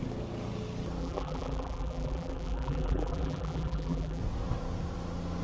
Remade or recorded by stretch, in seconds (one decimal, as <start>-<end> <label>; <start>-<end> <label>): 0.0-1.0 recorded; 1.0-4.2 remade; 4.2-5.4 recorded